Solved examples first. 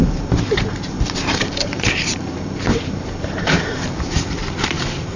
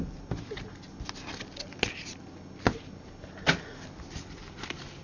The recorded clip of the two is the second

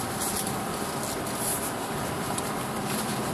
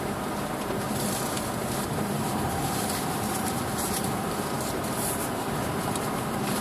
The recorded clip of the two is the first